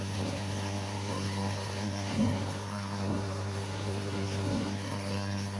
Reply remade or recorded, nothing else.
remade